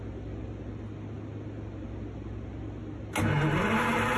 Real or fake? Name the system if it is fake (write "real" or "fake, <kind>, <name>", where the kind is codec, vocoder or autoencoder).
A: real